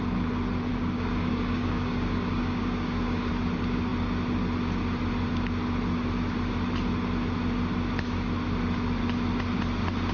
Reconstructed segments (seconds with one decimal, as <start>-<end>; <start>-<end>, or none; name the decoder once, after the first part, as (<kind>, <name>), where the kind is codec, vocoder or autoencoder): 0.7-3.3 (codec, DAC)